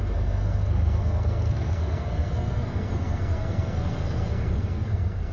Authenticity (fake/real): fake